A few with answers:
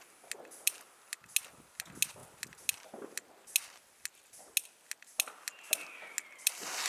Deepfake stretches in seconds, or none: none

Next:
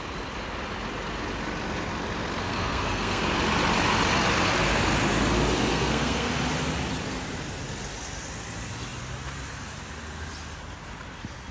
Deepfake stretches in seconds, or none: 2.4-3.2; 5.7-6.3

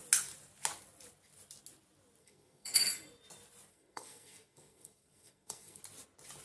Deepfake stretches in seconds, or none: 2.2-2.9; 3.7-5.8

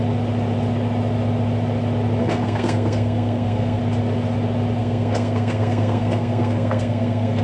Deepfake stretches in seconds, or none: 2.2-3.8; 4.8-7.4

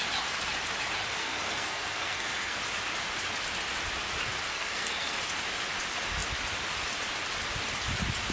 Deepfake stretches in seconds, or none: 1.2-2.6; 4.5-5.2

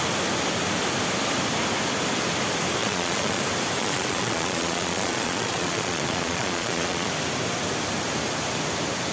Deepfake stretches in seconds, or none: 2.8-3.4; 3.8-7.1

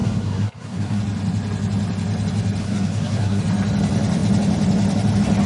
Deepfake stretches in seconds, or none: 0.0-1.0; 2.6-3.4

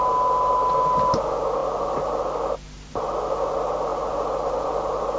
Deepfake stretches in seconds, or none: none